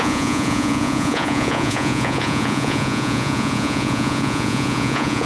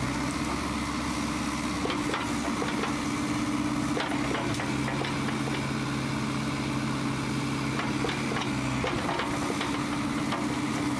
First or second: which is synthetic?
first